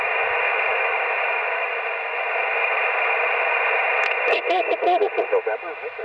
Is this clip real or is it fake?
real